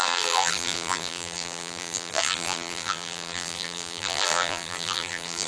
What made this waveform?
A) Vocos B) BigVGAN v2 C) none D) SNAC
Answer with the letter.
B